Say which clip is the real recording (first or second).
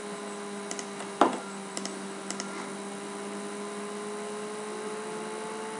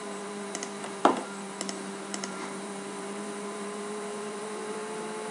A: first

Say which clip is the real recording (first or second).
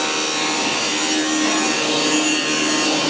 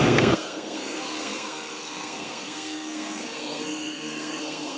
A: first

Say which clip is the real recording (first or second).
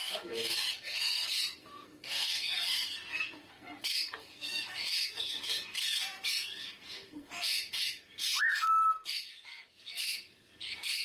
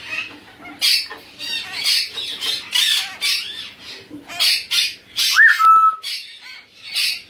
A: second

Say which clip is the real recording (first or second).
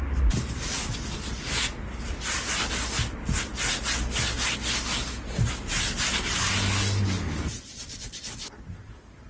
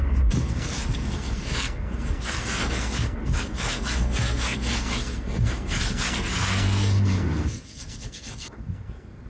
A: first